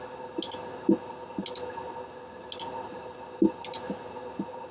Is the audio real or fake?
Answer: real